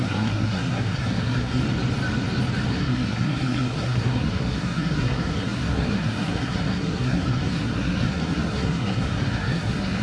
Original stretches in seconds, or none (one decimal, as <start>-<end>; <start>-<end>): 1.6-2.7